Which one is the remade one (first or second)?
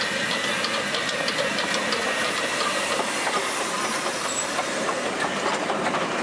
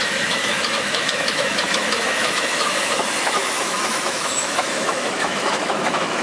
second